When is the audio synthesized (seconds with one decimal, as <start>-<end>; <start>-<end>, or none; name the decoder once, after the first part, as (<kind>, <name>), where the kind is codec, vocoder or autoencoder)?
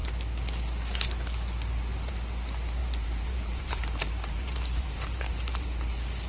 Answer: 2.8-5.8 (vocoder, BigVGAN v2)